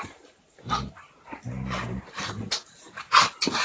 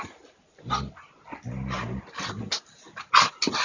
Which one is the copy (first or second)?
first